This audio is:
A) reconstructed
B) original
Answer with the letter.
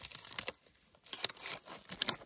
B